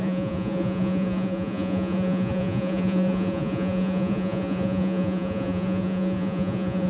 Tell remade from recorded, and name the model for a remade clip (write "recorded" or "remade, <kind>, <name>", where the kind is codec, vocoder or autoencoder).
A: remade, vocoder, Vocos